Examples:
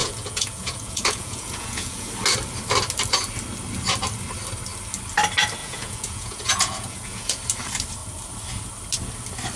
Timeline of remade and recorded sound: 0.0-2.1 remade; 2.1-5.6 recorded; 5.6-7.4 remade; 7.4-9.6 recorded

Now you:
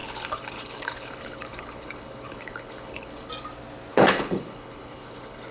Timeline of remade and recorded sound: 0.0-3.3 remade; 3.3-3.9 recorded; 3.9-5.5 remade